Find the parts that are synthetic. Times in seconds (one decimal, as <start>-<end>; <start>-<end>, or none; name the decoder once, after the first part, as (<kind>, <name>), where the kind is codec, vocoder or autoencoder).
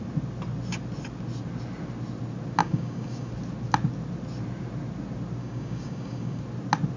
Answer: 2.6-3.3 (codec, DAC); 5.4-6.4